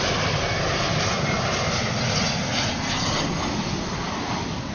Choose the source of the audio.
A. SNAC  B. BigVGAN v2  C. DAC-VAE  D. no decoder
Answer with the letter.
D